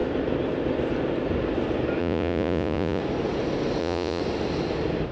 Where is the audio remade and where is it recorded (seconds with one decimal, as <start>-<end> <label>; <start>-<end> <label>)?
0.0-2.0 recorded; 2.0-3.0 remade; 3.0-3.8 recorded; 3.8-4.2 remade; 4.2-5.1 recorded